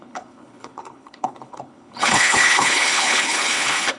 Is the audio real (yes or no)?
no